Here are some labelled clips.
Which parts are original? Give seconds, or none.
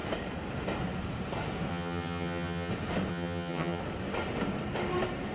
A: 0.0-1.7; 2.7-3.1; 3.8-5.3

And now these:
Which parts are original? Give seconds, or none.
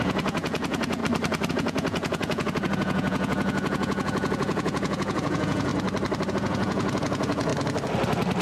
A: 1.0-1.5; 5.7-6.3; 7.5-8.4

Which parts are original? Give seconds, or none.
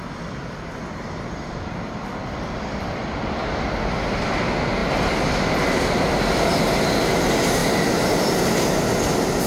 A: 0.0-9.5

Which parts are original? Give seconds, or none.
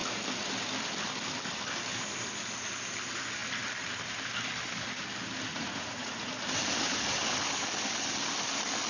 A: 0.0-5.5; 6.3-8.9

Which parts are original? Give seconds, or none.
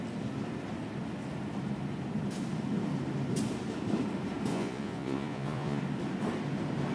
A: 0.0-4.5; 5.8-6.9